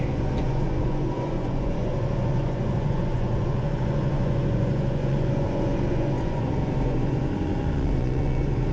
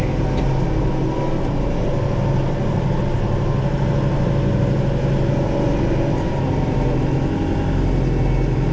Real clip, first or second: second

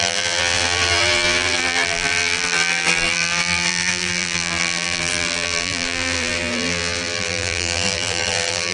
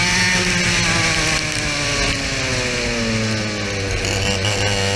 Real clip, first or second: second